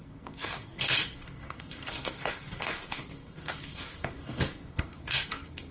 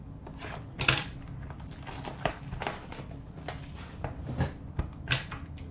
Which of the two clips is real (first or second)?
second